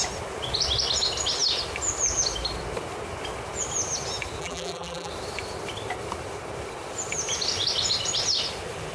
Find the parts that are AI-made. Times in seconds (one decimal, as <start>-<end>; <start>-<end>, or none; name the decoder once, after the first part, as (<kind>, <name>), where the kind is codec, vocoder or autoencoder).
4.4-5.1 (vocoder, BigVGAN v2)